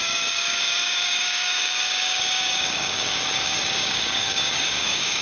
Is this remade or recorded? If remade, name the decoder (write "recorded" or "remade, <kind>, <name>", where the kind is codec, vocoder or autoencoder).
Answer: remade, codec, DAC